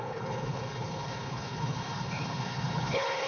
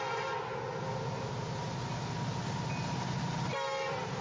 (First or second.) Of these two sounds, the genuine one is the second